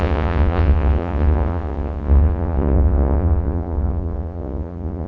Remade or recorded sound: remade